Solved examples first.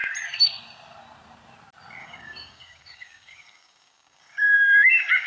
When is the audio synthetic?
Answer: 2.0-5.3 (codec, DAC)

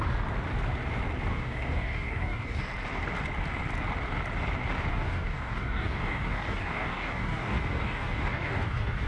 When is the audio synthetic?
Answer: 1.3-2.6 (codec, DAC); 4.9-9.1

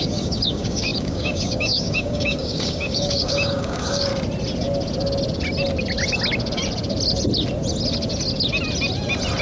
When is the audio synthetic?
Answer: 0.0-4.1 (codec, DAC)

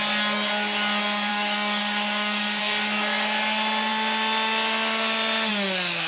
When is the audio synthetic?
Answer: 1.3-2.6 (codec, DAC)

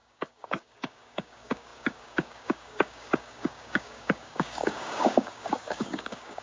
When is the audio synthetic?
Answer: 0.0-6.4 (codec, DAC)